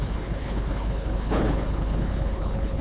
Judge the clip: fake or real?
fake